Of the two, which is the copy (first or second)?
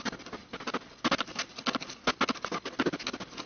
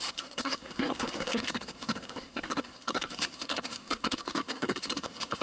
second